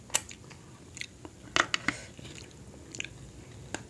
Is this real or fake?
real